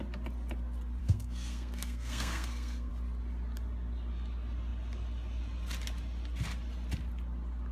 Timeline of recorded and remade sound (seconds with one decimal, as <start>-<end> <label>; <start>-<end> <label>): 0.0-1.0 recorded; 1.0-2.9 remade; 2.9-7.7 recorded